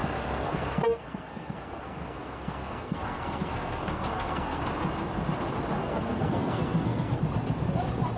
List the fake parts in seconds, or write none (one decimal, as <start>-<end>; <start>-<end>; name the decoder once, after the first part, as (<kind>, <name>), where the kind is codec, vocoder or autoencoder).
0.0-4.6 (codec, SNAC); 5.8-7.2